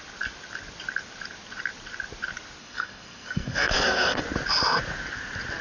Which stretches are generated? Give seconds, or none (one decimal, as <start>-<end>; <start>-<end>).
2.6-4.2

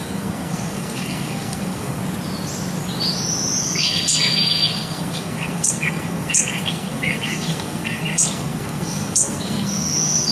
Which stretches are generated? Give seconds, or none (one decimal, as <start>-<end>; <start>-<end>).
0.0-2.0; 3.6-10.3